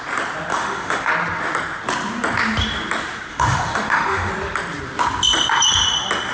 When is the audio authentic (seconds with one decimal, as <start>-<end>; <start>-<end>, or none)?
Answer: 0.0-0.5; 1.1-3.3; 4.3-6.3